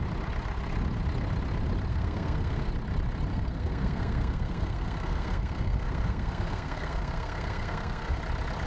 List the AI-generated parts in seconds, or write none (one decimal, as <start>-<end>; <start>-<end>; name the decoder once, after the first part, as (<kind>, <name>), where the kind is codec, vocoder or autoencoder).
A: 1.9-2.7 (codec, SNAC); 3.3-8.2